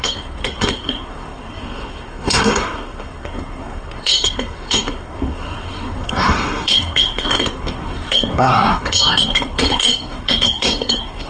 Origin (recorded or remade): remade